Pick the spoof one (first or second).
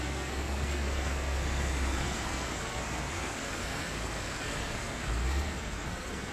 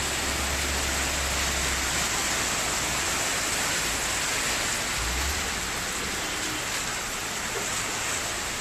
first